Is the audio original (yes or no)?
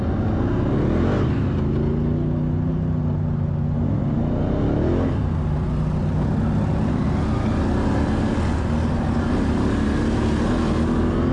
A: yes